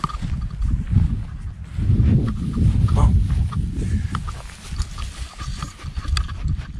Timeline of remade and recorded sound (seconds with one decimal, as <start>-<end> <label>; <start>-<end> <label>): 0.0-0.6 remade; 0.6-4.7 recorded; 4.7-6.8 remade